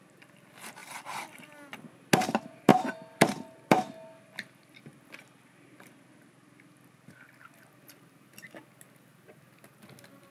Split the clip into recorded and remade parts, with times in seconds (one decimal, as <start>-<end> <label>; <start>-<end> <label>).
0.0-0.8 recorded; 0.8-1.8 remade; 1.8-10.3 recorded